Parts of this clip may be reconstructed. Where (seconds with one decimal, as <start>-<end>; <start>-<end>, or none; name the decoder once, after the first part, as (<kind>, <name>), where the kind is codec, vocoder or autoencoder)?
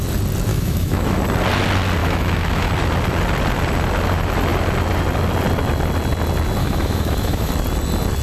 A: 0.5-1.2 (autoencoder, DAC-VAE); 2.0-2.7; 6.6-7.5